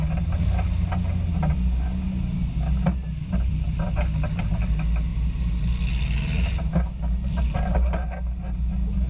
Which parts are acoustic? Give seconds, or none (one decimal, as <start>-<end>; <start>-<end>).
0.0-9.1